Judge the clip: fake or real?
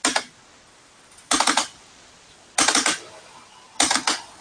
real